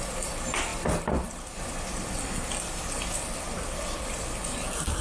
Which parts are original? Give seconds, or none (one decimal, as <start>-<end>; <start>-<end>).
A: 0.0-5.0